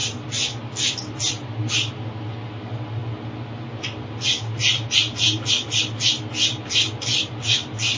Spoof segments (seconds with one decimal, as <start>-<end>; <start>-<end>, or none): none